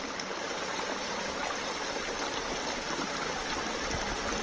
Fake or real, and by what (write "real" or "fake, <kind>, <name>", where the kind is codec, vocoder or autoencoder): real